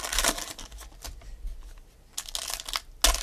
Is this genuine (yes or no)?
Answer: yes